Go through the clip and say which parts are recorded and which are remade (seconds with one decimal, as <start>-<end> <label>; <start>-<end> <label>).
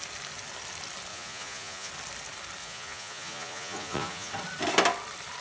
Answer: 0.0-1.1 recorded; 1.1-1.9 remade; 1.9-2.6 recorded; 2.6-4.3 remade; 4.3-5.4 recorded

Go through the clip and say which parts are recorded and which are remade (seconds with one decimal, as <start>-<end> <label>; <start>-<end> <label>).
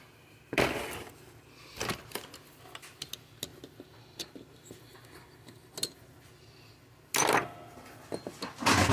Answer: 0.0-8.9 recorded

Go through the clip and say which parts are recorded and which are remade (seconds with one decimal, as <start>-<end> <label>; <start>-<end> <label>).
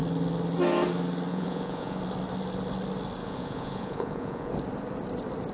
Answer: 0.0-1.3 recorded; 1.3-2.0 remade; 2.0-3.2 recorded; 3.2-4.5 remade; 4.5-5.5 recorded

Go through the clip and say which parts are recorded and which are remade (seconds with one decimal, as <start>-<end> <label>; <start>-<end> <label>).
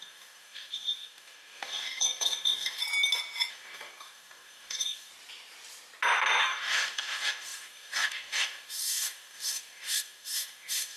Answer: 0.0-2.8 remade; 2.8-3.5 recorded; 3.5-5.1 remade; 5.1-6.4 recorded; 6.4-11.0 remade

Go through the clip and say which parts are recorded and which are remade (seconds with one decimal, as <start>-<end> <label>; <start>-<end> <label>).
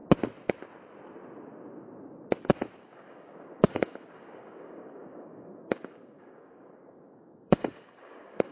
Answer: 0.0-2.8 recorded; 2.8-8.5 remade